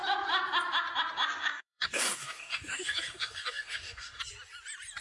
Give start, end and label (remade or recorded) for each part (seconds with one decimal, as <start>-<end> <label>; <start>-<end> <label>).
0.0-1.5 recorded; 1.5-4.2 remade; 4.2-5.0 recorded